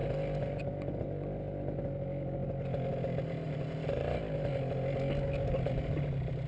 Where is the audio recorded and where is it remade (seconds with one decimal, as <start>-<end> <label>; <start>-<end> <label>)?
0.0-6.5 recorded